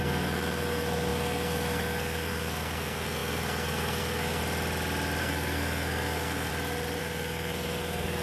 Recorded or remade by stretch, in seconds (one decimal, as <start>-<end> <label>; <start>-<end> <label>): 0.0-4.4 remade; 4.4-5.2 recorded; 5.2-6.5 remade; 6.5-7.0 recorded; 7.0-8.2 remade